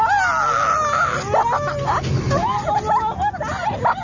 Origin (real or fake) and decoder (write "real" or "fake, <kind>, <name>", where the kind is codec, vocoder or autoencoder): real